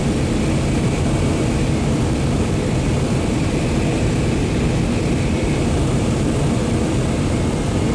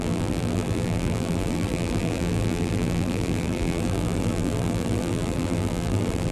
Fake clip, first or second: second